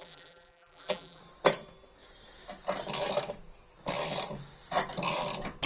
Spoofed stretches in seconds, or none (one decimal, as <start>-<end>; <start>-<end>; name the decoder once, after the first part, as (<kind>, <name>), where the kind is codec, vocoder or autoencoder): 0.0-1.2 (vocoder, BigVGAN v2)